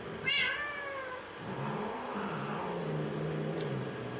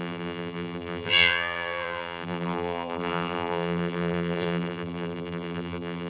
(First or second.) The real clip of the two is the first